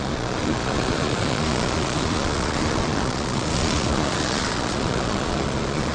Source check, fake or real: fake